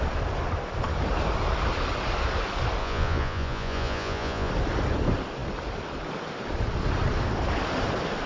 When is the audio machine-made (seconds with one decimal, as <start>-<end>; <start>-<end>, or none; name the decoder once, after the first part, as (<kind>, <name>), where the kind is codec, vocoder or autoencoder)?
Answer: 2.8-4.5 (vocoder, Vocos)